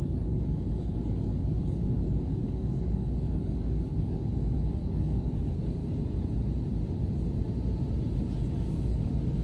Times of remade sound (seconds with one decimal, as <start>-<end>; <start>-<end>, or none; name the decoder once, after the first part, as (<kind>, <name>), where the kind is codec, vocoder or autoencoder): 0.0-5.8 (codec, DAC); 8.7-9.4